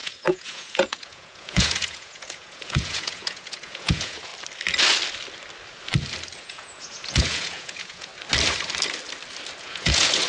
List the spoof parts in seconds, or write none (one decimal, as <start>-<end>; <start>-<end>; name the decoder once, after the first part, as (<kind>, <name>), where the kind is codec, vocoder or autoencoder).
0.0-4.3 (vocoder, Vocos); 6.4-8.1; 9.6-10.3